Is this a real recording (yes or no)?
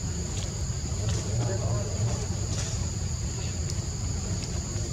yes